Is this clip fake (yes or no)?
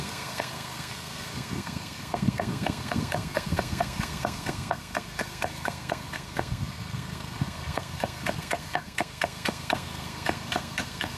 yes